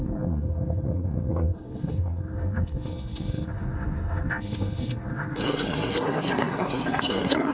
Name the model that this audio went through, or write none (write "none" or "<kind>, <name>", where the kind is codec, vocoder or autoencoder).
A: codec, SNAC